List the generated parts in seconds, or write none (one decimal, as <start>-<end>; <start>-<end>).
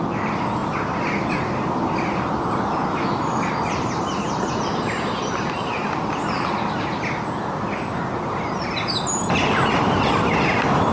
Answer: 2.9-3.5